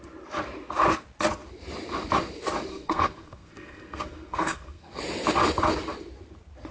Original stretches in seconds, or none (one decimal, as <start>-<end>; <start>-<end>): 0.0-2.7; 5.0-6.7